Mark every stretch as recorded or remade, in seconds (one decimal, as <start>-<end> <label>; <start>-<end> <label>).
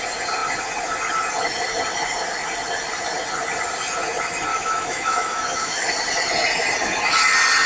0.0-4.5 recorded; 4.5-5.9 remade; 5.9-7.7 recorded